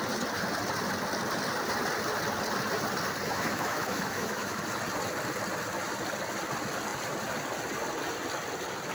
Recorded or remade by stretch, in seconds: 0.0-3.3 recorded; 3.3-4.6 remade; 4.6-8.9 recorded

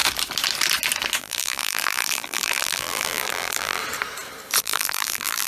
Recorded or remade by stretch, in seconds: 0.0-1.2 recorded; 1.2-3.8 remade; 3.8-4.6 recorded; 4.6-5.5 remade

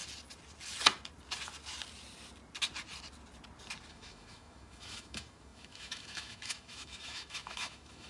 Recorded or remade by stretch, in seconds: 0.0-3.9 recorded; 3.9-8.1 remade

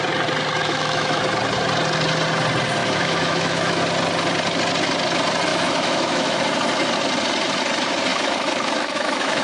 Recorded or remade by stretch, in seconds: 0.0-0.6 recorded; 0.6-1.2 remade; 1.2-2.8 recorded; 2.8-3.8 remade; 3.8-5.5 recorded; 5.5-6.4 remade; 6.4-8.1 recorded; 8.1-9.4 remade

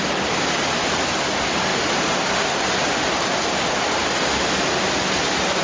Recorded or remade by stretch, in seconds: 0.0-4.0 recorded; 4.0-5.1 remade; 5.1-5.6 recorded